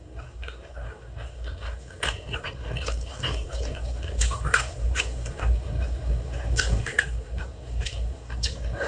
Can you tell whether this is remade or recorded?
remade